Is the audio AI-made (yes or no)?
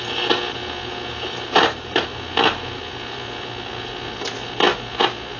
no